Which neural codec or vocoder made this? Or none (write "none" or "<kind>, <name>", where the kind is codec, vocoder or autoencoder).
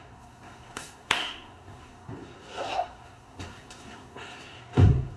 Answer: codec, SNAC